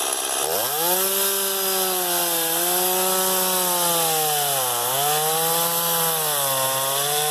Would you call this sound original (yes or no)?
yes